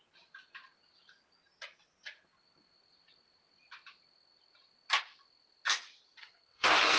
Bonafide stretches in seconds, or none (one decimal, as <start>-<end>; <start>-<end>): 0.0-6.2